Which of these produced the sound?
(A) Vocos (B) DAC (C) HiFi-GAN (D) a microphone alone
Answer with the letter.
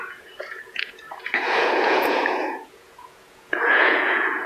A